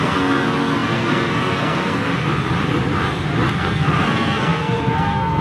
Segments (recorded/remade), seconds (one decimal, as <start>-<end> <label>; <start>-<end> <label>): 0.0-2.1 remade; 2.1-3.5 recorded; 3.5-5.4 remade